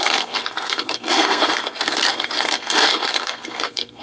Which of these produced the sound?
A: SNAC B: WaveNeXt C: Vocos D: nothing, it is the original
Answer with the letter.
A